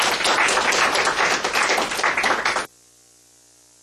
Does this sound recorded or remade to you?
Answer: recorded